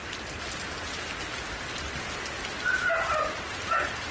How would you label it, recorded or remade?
recorded